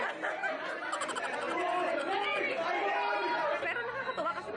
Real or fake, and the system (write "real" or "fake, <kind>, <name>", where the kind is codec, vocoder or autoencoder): real